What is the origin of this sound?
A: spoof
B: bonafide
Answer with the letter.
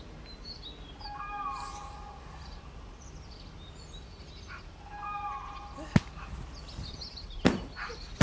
B